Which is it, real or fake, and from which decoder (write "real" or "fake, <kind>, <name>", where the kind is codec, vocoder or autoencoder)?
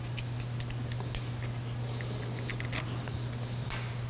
real